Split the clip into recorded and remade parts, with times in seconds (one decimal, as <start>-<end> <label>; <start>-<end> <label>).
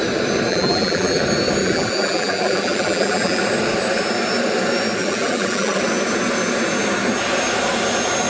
0.0-0.5 recorded; 0.5-1.2 remade; 1.2-1.6 recorded; 1.6-3.4 remade; 3.4-5.0 recorded; 5.0-5.8 remade; 5.8-8.3 recorded